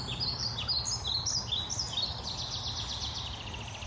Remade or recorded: recorded